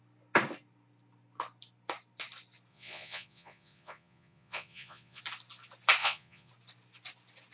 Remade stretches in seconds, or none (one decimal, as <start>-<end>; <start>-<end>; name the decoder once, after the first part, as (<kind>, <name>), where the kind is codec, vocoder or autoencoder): 2.7-5.2 (vocoder, Vocos); 6.0-6.5